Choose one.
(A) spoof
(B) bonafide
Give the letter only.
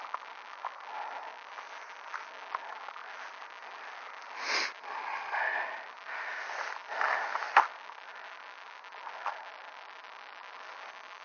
B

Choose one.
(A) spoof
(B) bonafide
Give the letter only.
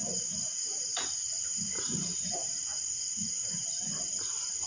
A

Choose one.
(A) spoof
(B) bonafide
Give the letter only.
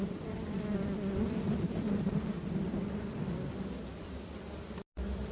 B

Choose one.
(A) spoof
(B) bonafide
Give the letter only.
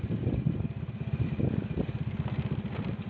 B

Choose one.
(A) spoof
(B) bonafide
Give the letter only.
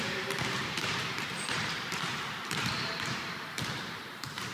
A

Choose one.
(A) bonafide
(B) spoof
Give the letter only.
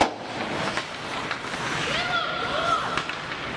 A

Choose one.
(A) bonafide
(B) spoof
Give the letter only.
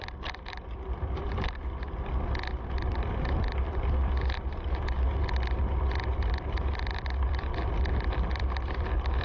B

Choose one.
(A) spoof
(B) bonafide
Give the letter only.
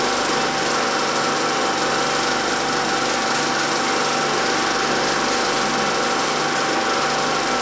B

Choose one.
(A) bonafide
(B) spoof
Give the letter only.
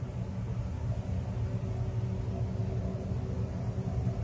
A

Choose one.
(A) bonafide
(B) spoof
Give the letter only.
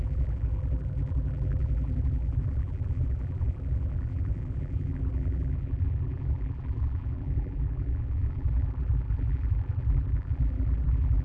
B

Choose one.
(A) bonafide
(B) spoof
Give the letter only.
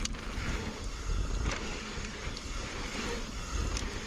A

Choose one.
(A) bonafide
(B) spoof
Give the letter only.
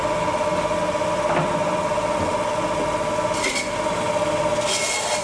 A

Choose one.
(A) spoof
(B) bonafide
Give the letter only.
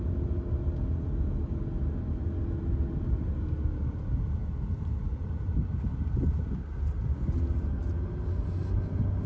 B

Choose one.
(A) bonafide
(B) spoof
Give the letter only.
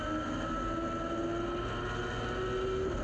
A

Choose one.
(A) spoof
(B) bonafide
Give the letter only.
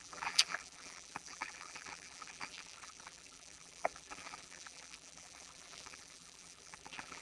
A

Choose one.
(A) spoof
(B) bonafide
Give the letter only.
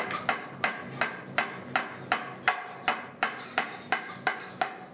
B